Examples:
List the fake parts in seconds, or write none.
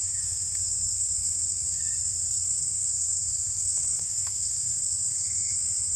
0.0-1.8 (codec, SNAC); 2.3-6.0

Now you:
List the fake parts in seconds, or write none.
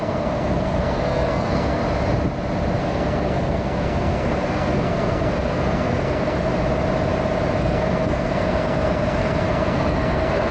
0.0-1.8 (codec, SNAC); 2.8-6.5; 7.6-10.5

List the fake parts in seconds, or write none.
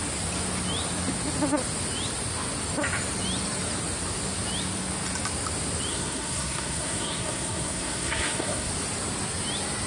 5.9-8.7 (codec, SNAC)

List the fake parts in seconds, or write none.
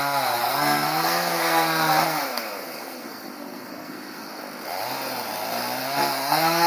0.4-4.4 (codec, SNAC); 5.8-6.7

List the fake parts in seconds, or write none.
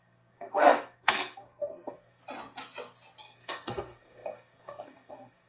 0.0-2.2 (codec, SNAC); 3.2-5.5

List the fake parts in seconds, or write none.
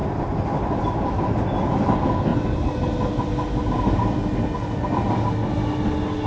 none